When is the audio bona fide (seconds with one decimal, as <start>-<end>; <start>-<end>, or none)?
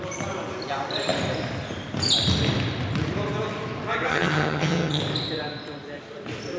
0.0-4.1; 5.0-6.6